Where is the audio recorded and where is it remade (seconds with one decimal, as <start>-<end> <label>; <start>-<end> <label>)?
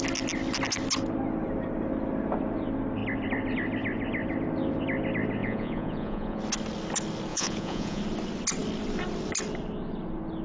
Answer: 0.0-5.4 recorded; 5.4-6.4 remade; 6.4-7.3 recorded; 7.3-8.0 remade; 8.0-10.4 recorded